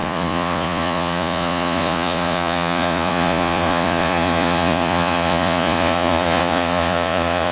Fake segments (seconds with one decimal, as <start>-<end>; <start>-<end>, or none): 0.0-7.5